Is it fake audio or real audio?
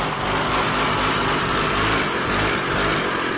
real